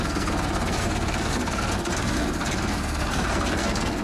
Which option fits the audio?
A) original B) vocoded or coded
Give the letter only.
B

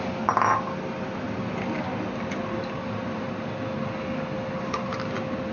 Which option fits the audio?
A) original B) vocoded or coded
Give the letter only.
A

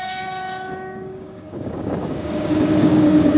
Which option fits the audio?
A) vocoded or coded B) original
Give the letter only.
A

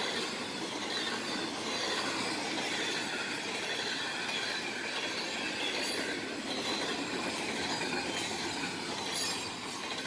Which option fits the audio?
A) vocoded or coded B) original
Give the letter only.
B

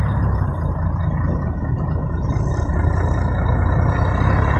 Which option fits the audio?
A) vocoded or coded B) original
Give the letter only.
B